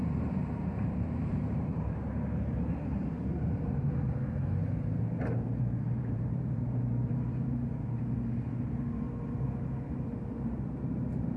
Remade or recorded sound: remade